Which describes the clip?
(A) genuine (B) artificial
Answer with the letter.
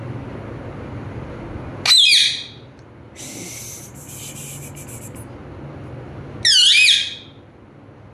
A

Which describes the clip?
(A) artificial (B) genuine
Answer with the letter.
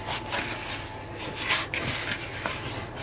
B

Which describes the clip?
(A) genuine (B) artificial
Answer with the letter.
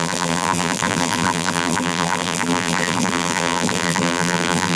B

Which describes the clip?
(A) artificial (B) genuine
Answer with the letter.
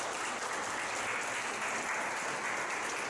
B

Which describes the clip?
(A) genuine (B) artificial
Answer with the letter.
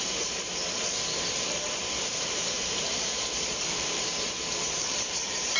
B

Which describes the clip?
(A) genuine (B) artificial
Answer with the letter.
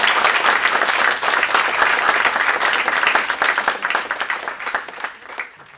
A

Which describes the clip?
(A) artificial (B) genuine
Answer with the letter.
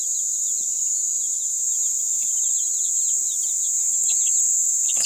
A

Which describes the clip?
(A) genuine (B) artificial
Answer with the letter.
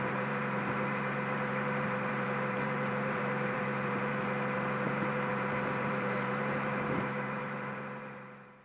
B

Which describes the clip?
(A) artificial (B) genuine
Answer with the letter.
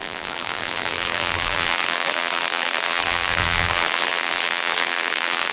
A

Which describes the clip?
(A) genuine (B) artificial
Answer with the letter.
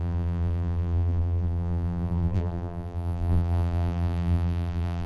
B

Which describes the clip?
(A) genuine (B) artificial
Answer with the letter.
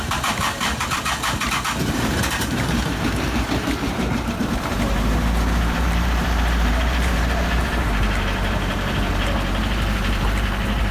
B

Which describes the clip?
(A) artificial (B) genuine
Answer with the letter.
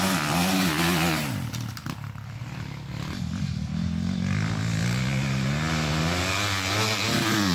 B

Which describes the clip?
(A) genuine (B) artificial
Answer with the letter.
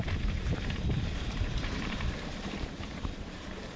B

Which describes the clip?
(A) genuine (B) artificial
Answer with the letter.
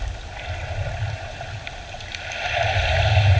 A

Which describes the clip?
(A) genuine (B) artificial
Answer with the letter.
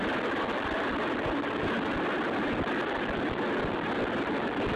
A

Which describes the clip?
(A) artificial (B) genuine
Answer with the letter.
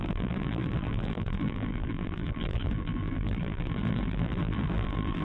A